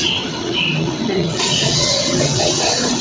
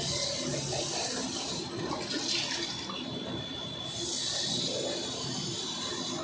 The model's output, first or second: first